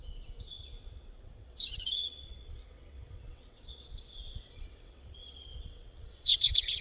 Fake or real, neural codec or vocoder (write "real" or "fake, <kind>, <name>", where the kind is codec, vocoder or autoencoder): fake, vocoder, WaveNeXt